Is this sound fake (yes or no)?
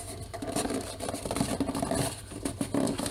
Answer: no